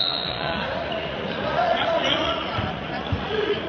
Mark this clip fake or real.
fake